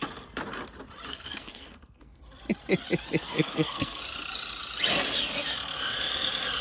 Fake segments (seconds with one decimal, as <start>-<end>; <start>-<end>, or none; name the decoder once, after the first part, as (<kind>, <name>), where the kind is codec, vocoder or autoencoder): 1.1-2.2 (codec, SNAC); 3.2-4.0